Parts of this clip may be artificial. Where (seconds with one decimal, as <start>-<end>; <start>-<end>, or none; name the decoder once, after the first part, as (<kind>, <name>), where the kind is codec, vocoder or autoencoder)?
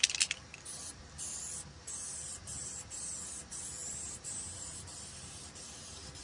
2.3-3.1 (vocoder, BigVGAN v2); 3.8-6.2